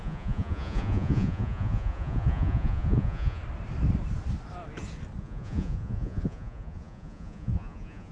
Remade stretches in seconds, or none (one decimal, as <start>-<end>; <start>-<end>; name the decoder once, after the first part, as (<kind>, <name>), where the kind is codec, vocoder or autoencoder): 0.0-3.4 (vocoder, Vocos); 5.2-8.1